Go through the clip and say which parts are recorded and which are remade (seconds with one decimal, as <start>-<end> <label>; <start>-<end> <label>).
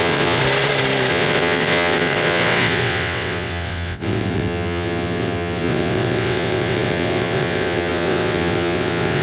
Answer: 0.0-0.4 remade; 0.4-1.1 recorded; 1.1-9.2 remade